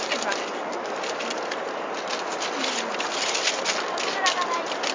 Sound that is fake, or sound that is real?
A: real